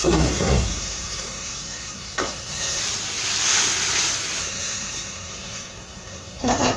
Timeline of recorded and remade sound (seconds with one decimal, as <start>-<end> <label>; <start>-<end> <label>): 0.0-2.8 remade; 2.8-4.4 recorded; 4.4-6.8 remade